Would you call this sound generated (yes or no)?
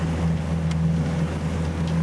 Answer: no